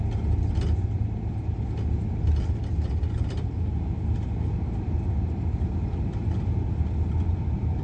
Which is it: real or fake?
real